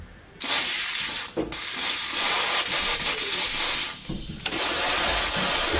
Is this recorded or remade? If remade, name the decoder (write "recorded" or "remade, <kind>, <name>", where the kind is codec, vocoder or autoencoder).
recorded